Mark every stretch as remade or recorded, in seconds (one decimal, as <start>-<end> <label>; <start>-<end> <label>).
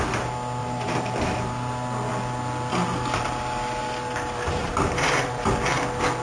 0.0-0.6 recorded; 0.6-1.7 remade; 1.7-4.6 recorded; 4.6-5.4 remade; 5.4-6.2 recorded